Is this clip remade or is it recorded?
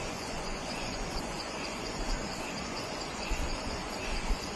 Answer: remade